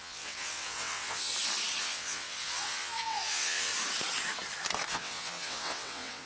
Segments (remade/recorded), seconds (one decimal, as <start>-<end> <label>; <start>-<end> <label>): 0.0-1.3 remade; 1.3-1.8 recorded; 1.8-3.7 remade; 3.7-4.9 recorded; 4.9-6.3 remade